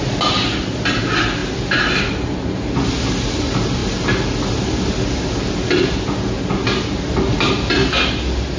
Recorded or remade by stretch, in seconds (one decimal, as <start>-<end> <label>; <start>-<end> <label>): 0.0-8.6 recorded